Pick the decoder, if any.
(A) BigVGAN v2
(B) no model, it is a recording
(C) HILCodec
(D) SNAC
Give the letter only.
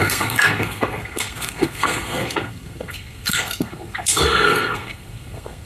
D